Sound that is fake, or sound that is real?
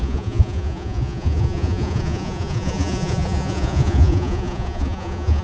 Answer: fake